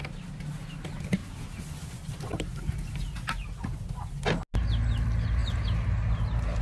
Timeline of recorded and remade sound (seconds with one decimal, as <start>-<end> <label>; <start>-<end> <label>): 0.0-6.6 recorded